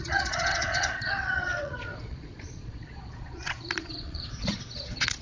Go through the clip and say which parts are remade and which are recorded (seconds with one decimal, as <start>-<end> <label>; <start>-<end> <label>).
0.0-5.2 remade